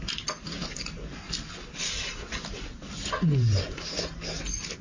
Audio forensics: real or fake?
real